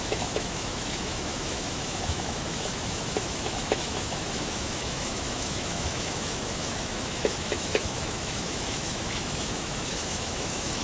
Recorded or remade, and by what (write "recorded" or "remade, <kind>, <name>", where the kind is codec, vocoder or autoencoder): remade, autoencoder, DAC-VAE